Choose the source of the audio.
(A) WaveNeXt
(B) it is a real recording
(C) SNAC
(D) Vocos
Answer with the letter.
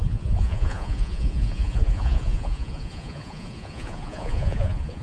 D